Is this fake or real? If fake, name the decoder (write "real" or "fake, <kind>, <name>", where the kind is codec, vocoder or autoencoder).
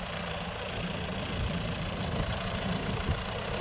fake, vocoder, BigVGAN v2